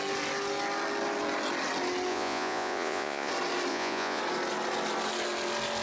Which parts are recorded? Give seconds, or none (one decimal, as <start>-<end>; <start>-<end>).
0.0-2.1; 3.3-3.7; 4.2-5.8